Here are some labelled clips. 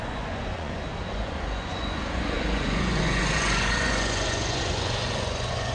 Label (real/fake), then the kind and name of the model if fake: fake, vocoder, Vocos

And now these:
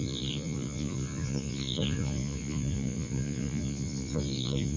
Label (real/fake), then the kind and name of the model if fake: fake, vocoder, Vocos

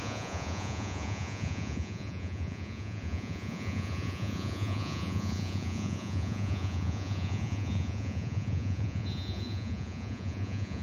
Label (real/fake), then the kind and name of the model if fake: fake, vocoder, Vocos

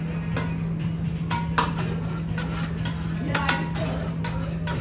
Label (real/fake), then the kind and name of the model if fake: real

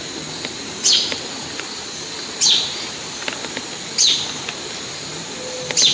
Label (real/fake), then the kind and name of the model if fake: real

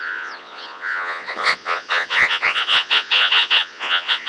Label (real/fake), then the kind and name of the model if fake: fake, vocoder, Vocos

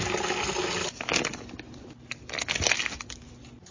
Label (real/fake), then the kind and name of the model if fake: real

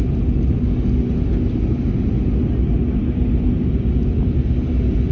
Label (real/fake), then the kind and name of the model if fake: real